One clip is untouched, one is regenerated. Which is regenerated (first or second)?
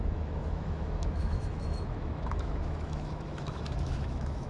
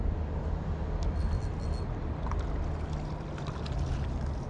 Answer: first